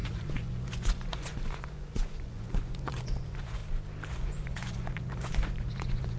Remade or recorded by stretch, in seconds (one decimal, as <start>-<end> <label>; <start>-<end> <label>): 0.0-3.6 remade; 3.6-4.1 recorded; 4.1-6.2 remade